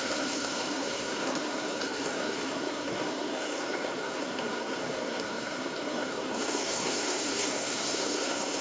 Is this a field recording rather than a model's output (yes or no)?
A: no